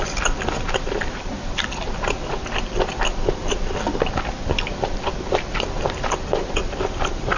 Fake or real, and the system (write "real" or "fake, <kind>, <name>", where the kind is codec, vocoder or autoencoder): real